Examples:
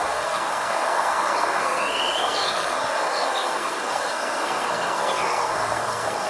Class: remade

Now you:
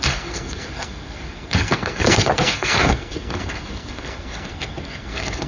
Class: remade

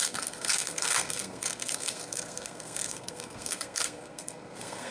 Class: remade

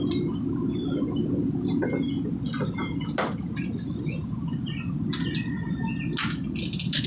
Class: recorded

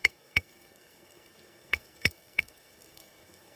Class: remade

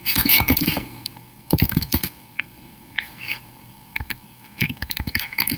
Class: remade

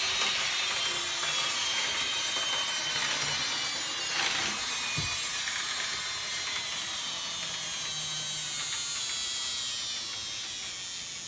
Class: recorded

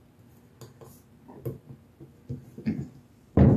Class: recorded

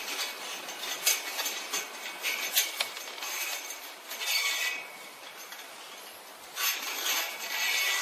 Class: recorded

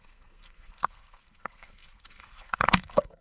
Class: remade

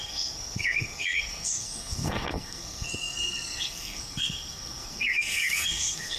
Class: remade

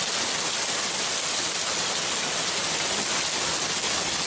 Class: recorded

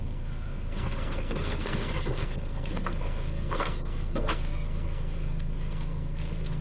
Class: remade